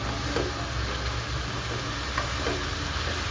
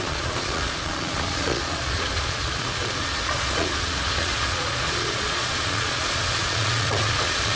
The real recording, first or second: first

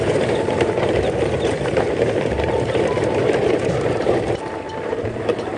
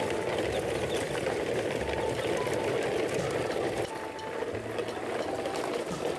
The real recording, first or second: second